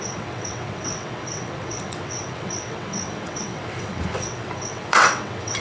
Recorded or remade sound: remade